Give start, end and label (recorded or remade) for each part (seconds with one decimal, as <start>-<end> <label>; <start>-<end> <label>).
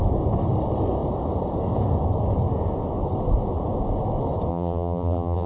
0.0-4.5 recorded; 4.5-5.5 remade